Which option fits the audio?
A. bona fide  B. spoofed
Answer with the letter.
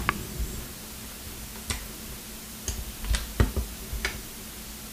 A